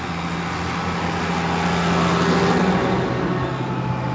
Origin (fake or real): real